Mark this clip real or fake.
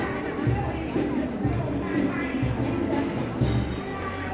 real